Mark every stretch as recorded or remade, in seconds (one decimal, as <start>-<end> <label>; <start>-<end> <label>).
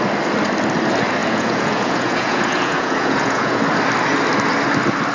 0.0-1.2 recorded; 1.2-3.6 remade; 3.6-5.1 recorded